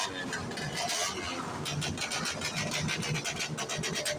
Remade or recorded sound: recorded